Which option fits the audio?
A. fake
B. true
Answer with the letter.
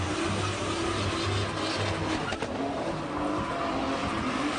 B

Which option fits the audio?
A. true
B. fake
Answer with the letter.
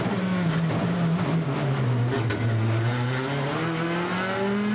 A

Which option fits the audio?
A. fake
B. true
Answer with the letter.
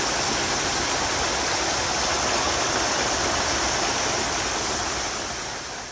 B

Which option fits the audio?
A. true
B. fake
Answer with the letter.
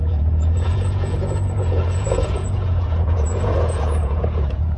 B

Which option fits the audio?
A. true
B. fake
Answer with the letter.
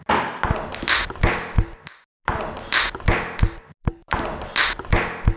A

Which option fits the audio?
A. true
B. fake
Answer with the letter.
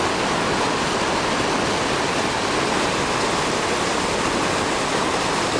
A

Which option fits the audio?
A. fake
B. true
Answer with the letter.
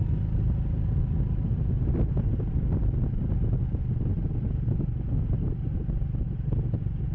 B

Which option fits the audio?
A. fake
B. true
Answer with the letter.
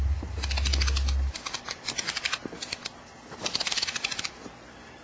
B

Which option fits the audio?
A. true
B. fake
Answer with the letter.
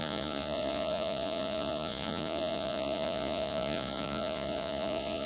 B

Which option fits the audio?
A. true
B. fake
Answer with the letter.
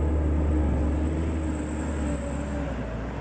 A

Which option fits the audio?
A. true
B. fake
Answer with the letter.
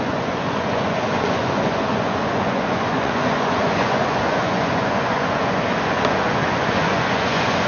B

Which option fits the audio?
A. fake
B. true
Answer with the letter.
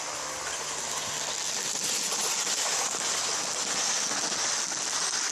B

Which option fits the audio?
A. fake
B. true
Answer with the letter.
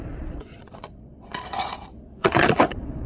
A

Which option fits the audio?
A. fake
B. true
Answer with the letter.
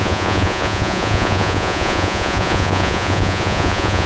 A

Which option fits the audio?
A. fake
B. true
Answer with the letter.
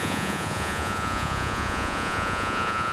A